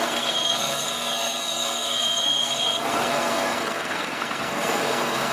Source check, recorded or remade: remade